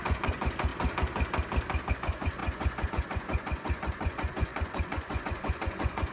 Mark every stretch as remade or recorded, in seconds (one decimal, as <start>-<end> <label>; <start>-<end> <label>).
0.0-0.7 remade; 0.7-1.9 recorded; 1.9-6.1 remade